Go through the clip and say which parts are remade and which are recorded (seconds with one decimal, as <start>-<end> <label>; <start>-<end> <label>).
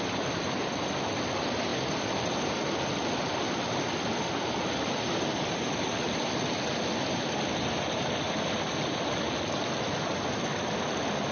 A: 0.0-11.3 recorded